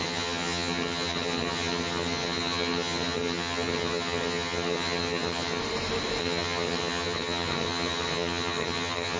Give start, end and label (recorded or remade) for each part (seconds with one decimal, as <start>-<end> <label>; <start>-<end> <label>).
0.0-5.6 remade; 5.6-6.2 recorded; 6.2-9.2 remade